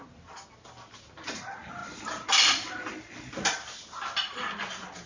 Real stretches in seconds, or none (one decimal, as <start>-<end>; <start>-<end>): 0.0-5.1